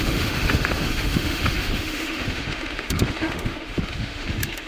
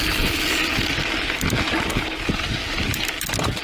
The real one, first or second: second